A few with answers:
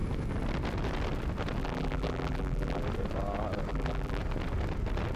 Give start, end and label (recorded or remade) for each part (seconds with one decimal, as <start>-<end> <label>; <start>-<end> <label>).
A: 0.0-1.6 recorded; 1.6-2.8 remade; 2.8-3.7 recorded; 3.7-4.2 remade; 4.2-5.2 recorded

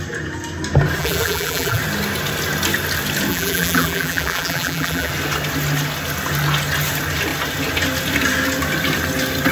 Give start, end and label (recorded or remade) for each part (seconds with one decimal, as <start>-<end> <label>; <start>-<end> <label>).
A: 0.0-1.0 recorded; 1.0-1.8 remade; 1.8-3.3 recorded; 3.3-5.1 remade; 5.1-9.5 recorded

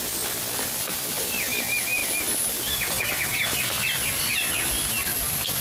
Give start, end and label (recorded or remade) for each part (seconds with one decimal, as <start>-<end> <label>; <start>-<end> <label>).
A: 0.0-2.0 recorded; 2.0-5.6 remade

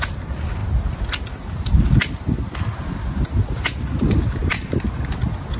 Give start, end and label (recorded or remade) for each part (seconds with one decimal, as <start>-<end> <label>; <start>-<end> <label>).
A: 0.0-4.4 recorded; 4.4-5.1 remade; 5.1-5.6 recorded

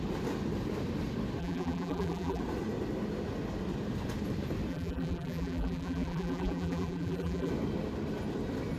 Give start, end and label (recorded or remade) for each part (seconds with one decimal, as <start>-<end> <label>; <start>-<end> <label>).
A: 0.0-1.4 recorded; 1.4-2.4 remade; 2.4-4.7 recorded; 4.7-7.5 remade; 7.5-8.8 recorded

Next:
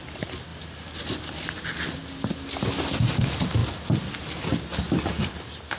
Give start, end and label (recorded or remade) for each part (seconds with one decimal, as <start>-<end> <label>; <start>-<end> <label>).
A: 0.0-2.0 recorded; 2.0-3.1 remade; 3.1-5.8 recorded